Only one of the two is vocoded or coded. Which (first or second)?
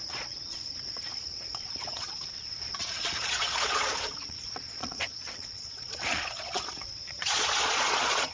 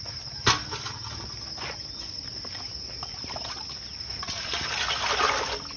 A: first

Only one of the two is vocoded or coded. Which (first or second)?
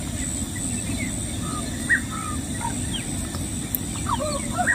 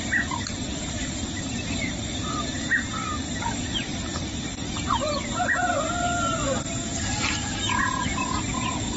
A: second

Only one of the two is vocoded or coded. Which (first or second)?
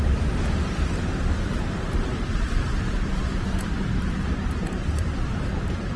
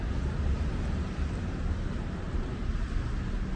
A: first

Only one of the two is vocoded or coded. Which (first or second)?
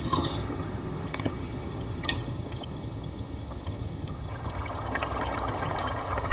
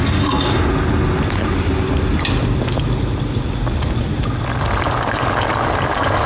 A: first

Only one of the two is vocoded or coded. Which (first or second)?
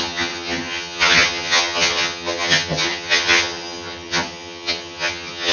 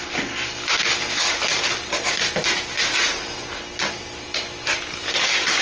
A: first